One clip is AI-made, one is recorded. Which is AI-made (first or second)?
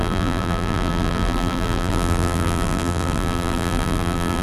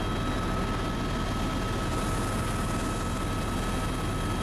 first